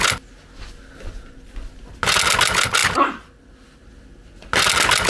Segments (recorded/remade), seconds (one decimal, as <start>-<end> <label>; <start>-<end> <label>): 0.0-2.8 recorded; 2.8-3.9 remade; 3.9-5.1 recorded